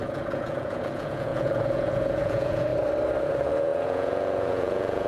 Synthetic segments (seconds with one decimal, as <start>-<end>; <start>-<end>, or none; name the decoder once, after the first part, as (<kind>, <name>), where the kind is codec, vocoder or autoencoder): 0.0-2.7 (vocoder, Vocos); 3.2-5.1